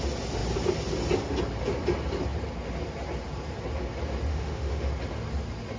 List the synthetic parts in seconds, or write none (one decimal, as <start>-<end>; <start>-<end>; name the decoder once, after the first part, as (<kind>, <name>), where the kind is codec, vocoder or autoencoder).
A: 4.3-4.9 (autoencoder, DAC-VAE)